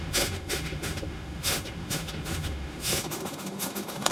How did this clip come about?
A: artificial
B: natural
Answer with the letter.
A